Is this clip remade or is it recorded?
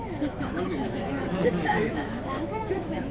remade